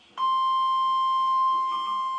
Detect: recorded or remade recorded